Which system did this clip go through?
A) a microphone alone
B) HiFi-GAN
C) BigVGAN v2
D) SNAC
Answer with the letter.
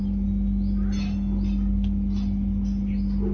A